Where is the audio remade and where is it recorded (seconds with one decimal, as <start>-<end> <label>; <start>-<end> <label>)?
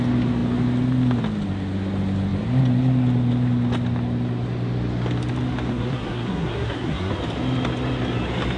0.0-5.7 recorded; 5.7-7.1 remade; 7.1-8.6 recorded